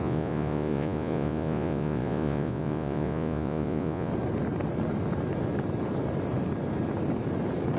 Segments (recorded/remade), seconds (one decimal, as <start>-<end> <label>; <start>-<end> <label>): 0.0-4.1 remade; 4.1-7.8 recorded